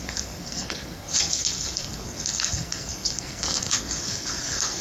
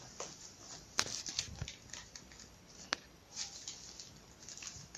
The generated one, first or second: first